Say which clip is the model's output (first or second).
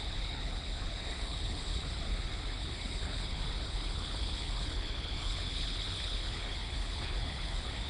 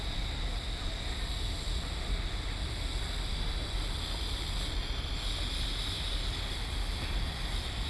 first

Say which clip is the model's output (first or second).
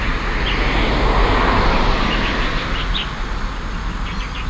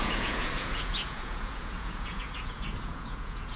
second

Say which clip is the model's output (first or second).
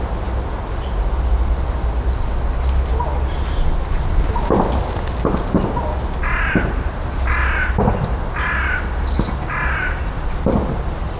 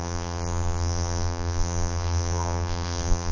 second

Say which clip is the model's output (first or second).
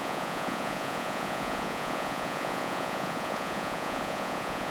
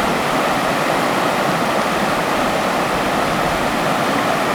first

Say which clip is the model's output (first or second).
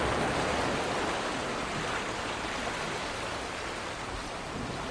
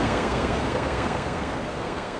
second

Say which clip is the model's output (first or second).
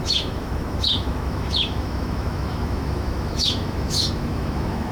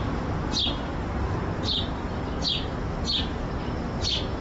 first